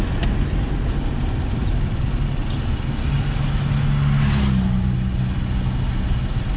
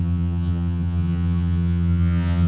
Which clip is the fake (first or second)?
second